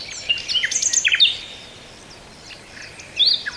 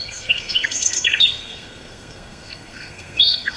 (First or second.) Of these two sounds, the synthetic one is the second